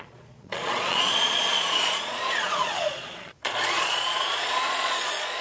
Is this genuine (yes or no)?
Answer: no